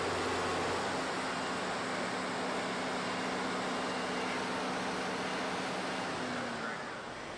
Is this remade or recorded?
recorded